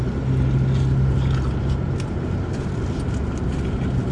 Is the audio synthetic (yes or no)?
no